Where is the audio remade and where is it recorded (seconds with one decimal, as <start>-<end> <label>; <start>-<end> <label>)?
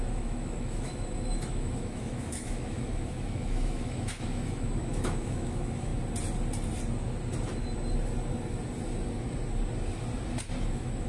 0.0-5.9 remade; 5.9-10.6 recorded; 10.6-11.1 remade